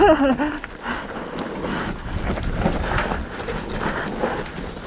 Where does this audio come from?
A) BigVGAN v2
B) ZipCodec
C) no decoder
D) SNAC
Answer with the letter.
C